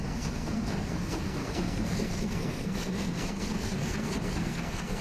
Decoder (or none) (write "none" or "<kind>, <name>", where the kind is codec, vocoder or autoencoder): codec, SNAC